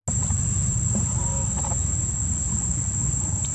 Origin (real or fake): real